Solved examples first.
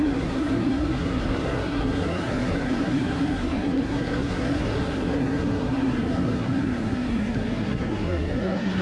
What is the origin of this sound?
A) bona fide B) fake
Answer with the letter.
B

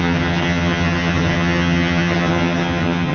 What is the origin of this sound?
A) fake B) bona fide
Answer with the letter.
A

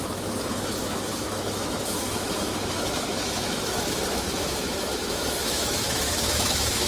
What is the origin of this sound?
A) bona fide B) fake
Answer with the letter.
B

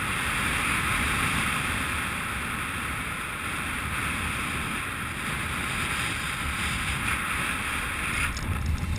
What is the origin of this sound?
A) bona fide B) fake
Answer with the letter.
A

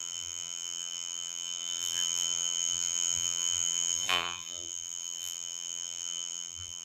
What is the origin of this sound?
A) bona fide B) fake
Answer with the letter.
B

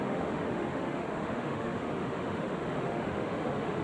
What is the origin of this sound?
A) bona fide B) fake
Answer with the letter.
B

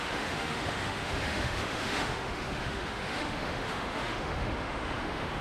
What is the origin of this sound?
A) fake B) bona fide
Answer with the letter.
A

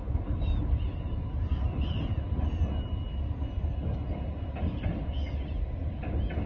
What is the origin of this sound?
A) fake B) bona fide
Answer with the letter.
B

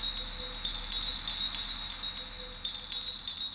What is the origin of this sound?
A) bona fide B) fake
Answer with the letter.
A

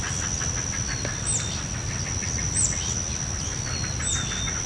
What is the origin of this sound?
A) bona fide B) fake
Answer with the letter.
A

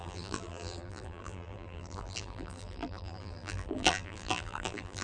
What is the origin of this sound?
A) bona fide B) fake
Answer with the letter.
B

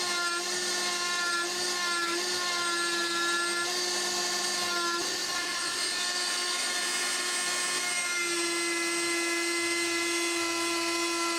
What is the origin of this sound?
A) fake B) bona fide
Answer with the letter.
B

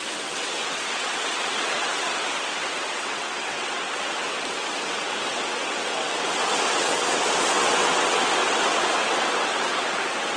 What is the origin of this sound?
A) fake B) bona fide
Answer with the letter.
A